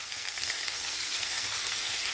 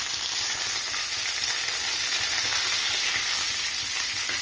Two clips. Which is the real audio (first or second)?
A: second